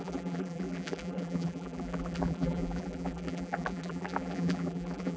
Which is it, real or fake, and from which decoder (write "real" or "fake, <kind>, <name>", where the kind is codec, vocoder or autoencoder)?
fake, vocoder, BigVGAN v2